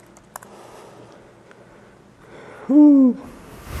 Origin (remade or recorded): recorded